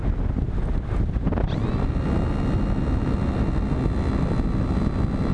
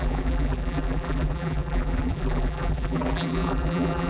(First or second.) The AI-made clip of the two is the second